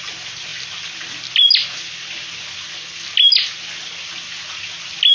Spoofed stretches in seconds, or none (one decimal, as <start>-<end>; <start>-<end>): none

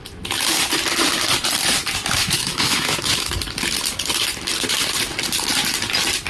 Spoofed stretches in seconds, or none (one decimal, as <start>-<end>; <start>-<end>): 2.2-3.3

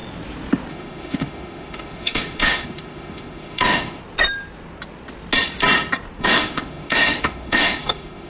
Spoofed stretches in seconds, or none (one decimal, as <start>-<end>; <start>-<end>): 0.7-4.0; 6.2-8.3